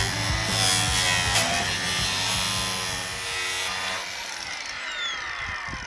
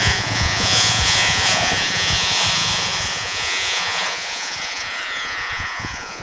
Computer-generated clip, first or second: second